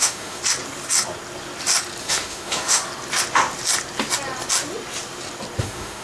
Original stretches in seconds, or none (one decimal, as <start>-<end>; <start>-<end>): 0.4-2.0; 2.8-5.6